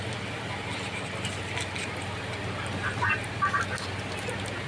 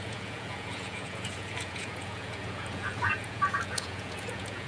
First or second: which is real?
first